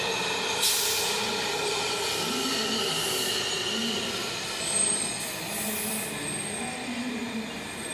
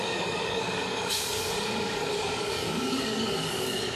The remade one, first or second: second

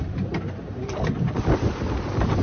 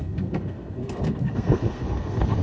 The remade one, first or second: second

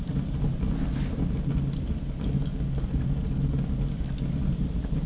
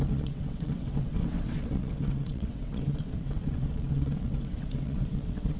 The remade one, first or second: second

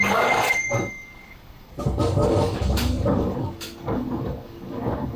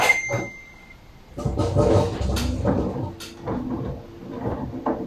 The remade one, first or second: first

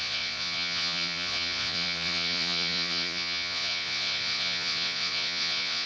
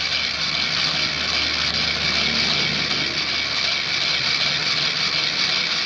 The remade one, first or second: first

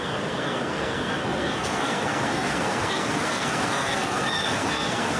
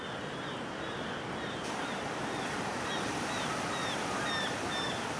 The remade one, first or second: first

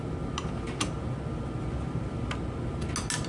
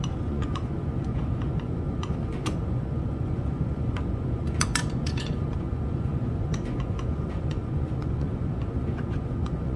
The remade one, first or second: second